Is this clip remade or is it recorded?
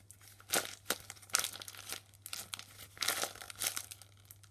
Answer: recorded